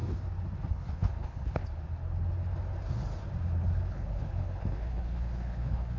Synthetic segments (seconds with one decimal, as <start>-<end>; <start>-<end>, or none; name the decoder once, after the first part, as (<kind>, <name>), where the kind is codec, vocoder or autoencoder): 0.7-1.6 (codec, HILCodec); 3.9-6.0